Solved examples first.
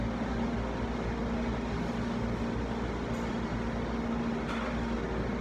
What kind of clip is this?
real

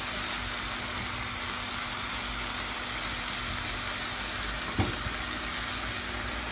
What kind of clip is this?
real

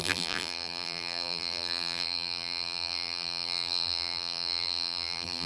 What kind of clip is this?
fake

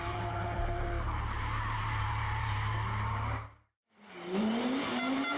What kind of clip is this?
fake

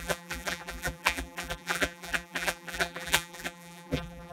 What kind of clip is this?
fake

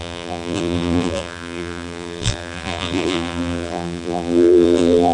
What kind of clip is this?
fake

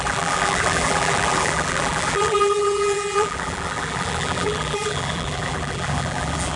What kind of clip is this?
fake